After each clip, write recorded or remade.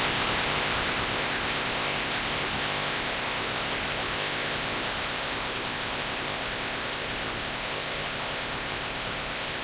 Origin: remade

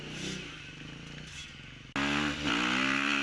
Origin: recorded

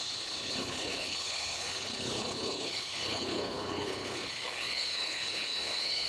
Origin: remade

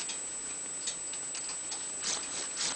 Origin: recorded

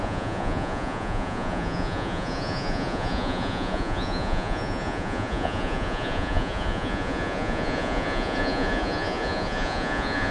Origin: remade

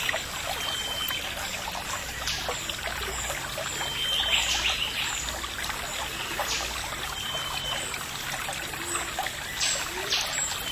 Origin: recorded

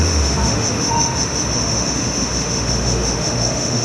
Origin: remade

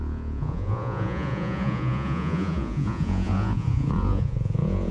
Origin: remade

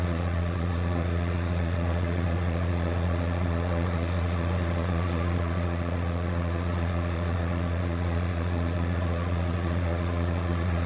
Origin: remade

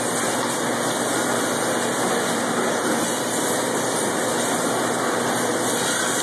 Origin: recorded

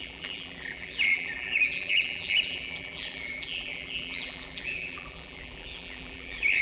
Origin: remade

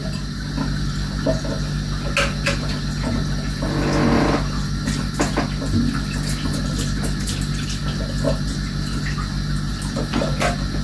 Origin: recorded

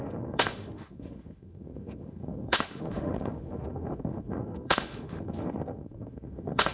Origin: remade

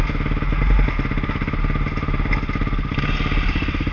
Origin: recorded